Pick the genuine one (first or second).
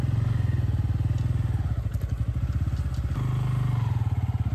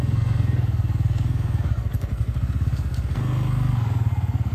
first